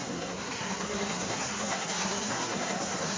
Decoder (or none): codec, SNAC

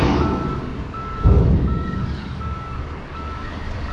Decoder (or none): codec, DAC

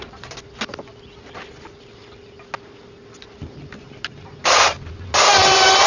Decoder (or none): none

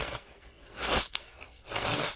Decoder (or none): codec, SNAC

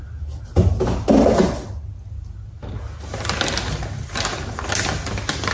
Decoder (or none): none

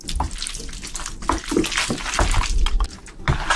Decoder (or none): none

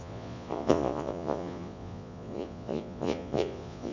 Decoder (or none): vocoder, Vocos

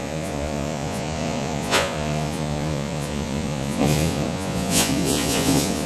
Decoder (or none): vocoder, Vocos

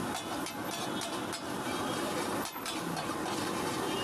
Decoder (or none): none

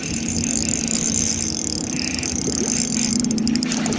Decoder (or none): none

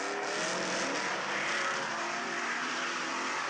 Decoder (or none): none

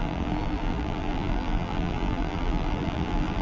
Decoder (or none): vocoder, BigVGAN v2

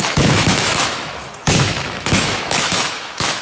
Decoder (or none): autoencoder, DAC-VAE